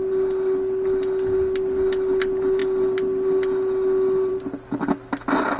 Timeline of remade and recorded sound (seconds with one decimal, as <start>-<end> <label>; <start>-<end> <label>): 0.0-5.6 recorded